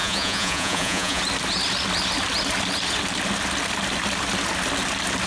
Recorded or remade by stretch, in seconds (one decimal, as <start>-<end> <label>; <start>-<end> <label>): 0.0-1.2 remade; 1.2-5.3 recorded